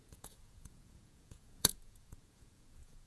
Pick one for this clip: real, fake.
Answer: fake